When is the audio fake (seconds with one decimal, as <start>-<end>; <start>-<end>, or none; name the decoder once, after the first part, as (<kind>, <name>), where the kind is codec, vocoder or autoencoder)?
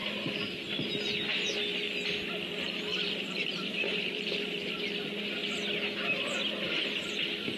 2.9-4.7 (vocoder, BigVGAN v2)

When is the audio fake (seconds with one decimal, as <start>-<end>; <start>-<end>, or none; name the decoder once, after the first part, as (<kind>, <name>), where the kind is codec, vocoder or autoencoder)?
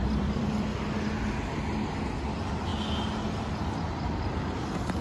0.0-0.7 (vocoder, BigVGAN v2); 2.3-2.7; 3.4-5.0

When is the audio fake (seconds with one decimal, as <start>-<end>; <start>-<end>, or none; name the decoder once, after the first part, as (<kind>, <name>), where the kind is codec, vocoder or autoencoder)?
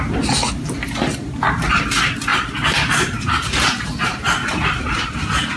2.3-5.0 (vocoder, BigVGAN v2)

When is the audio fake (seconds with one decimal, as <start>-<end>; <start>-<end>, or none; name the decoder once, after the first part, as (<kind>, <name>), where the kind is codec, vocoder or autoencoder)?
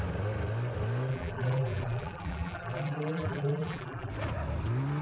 1.1-4.1 (vocoder, BigVGAN v2)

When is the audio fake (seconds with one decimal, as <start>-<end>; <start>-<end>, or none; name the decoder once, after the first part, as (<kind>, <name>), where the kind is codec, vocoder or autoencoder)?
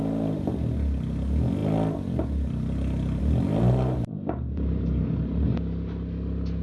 none